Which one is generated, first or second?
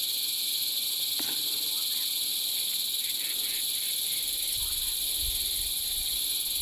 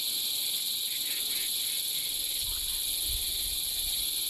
first